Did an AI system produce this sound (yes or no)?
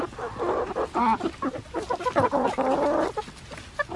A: no